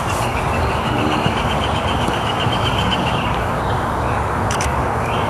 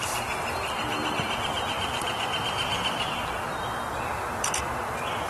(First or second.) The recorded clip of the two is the second